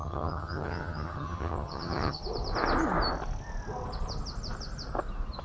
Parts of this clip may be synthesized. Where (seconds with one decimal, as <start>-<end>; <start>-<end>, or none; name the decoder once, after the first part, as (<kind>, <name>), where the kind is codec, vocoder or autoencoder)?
0.0-2.2 (vocoder, HiFi-GAN)